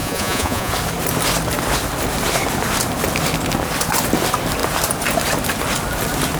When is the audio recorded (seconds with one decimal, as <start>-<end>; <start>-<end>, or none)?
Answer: 0.7-6.4